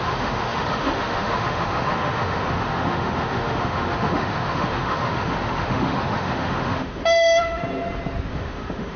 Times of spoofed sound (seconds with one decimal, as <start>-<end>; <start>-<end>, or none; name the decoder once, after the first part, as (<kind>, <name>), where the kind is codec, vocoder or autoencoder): 0.0-7.6 (autoencoder, DAC-VAE); 8.3-9.0